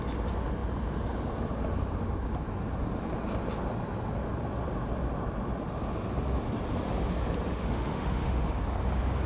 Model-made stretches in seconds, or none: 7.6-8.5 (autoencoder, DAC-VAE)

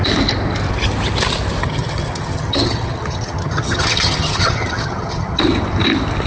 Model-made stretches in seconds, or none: 1.6-5.4 (vocoder, HiFi-GAN)

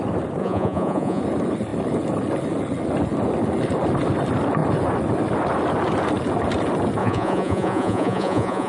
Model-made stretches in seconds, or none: 0.4-1.2 (vocoder, Vocos); 7.0-8.7

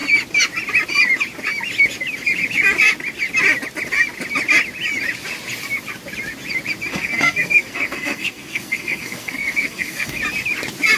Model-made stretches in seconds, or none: 6.9-10.2 (codec, SNAC)

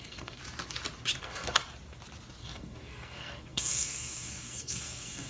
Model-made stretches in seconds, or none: 0.0-0.4 (codec, SNAC); 1.2-1.6; 2.4-5.3